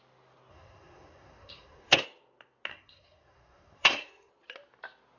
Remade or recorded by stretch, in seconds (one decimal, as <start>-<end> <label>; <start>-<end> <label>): 0.0-0.5 recorded; 0.5-2.0 remade; 2.0-2.7 recorded; 2.7-4.3 remade; 4.3-5.2 recorded